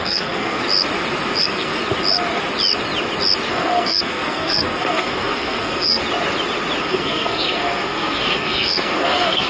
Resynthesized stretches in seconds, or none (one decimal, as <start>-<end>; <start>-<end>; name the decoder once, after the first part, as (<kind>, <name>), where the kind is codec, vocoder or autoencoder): 0.0-0.6 (codec, SNAC); 1.4-1.8; 3.5-6.0; 6.8-9.5